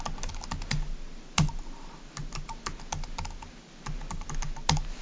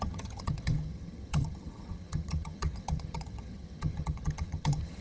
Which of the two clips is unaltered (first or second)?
first